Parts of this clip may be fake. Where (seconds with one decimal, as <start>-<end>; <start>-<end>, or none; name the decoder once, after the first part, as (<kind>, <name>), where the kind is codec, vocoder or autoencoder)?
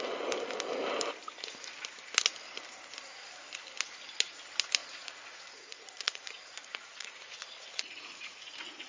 4.8-8.9 (vocoder, Vocos)